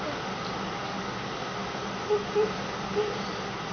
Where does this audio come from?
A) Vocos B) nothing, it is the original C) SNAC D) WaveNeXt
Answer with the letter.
B